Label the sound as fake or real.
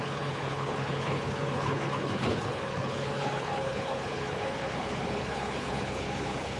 fake